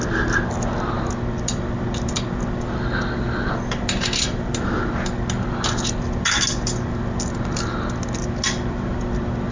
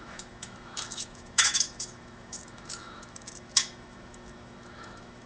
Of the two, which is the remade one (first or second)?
second